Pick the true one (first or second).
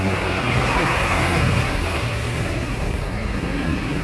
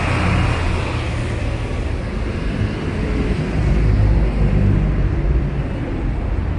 second